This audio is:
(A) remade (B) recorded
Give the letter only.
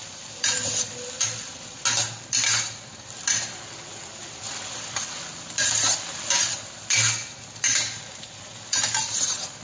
B